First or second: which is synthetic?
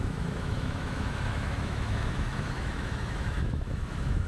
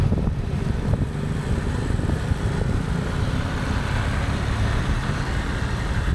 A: first